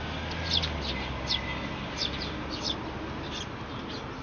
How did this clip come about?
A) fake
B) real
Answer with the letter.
B